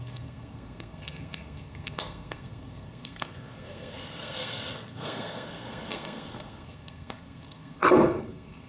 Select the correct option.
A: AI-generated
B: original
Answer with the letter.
A